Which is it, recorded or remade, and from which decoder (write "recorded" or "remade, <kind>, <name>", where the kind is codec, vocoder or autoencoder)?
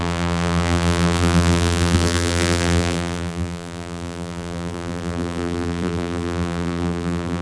remade, vocoder, BigVGAN v2